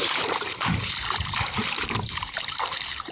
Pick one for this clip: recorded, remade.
remade